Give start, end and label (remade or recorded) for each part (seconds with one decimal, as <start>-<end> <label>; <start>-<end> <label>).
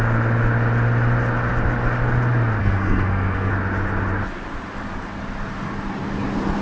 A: 0.0-2.6 recorded; 2.6-3.5 remade; 3.5-6.6 recorded